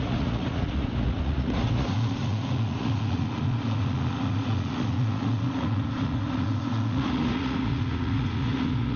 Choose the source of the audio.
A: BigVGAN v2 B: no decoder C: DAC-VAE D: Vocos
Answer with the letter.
D